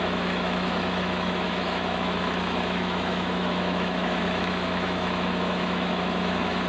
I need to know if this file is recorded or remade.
remade